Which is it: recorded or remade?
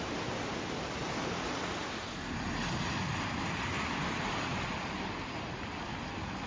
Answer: recorded